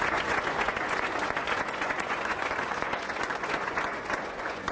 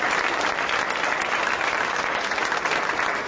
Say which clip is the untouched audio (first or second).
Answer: second